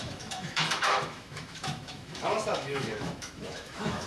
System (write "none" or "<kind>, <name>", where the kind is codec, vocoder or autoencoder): autoencoder, DAC-VAE